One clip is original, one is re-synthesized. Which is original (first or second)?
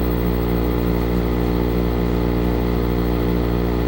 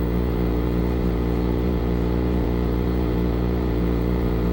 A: first